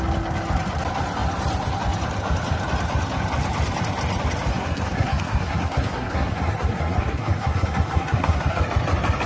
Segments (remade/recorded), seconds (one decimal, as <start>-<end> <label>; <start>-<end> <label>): 0.0-4.5 recorded; 4.5-8.6 remade; 8.6-9.3 recorded